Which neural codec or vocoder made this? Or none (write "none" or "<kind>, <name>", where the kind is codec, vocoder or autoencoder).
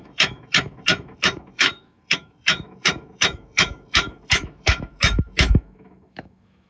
autoencoder, DAC-VAE